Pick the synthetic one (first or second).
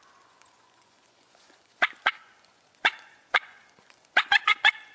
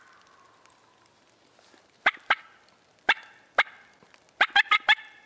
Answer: first